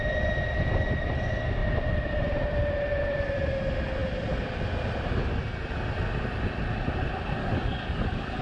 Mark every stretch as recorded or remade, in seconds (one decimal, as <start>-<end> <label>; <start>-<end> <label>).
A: 0.0-7.4 recorded; 7.4-8.4 remade